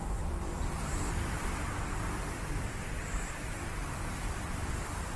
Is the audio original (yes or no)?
no